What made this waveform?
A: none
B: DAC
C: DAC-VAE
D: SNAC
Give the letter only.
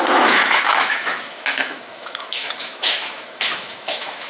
C